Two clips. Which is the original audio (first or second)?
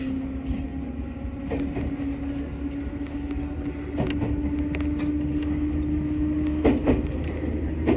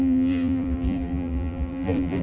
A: first